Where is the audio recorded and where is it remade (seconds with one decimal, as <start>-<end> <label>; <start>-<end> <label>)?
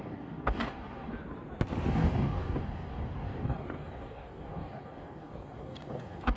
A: 0.0-1.1 remade; 1.1-1.9 recorded; 1.9-6.4 remade